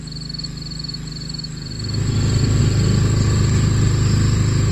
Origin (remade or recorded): recorded